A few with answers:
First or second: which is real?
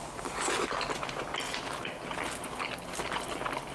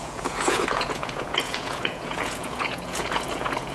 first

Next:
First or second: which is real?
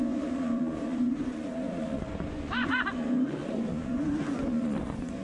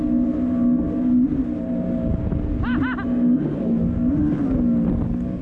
second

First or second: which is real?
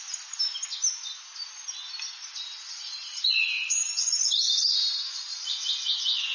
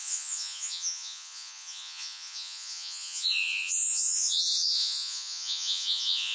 first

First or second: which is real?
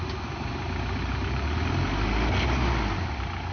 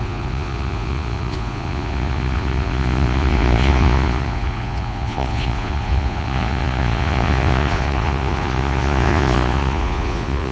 first